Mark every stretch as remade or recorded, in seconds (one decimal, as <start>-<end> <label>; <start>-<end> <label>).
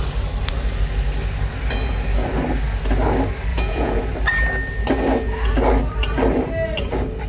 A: 0.0-3.5 recorded; 3.5-4.0 remade; 4.0-7.3 recorded